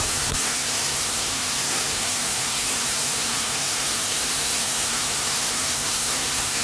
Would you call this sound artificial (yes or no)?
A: yes